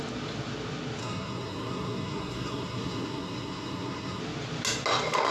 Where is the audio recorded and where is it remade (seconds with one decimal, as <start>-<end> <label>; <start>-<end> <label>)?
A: 0.0-1.0 recorded; 1.0-4.2 remade; 4.2-5.3 recorded